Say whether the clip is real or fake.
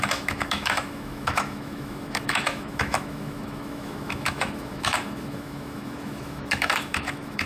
fake